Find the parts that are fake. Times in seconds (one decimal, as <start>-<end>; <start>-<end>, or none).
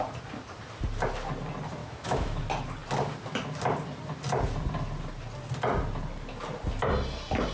1.8-2.4